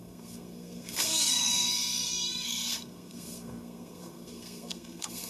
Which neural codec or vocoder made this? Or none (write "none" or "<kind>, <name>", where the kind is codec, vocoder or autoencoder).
codec, SNAC